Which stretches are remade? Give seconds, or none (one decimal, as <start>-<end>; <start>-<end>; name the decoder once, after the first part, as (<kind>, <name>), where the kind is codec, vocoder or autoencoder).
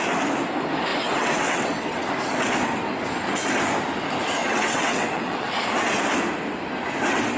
0.9-2.0 (vocoder, WaveNeXt); 4.4-5.5